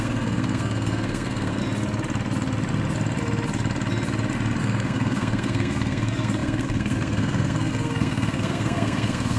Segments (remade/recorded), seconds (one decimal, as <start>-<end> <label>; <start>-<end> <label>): 0.0-1.6 remade; 1.6-4.6 recorded; 4.6-9.4 remade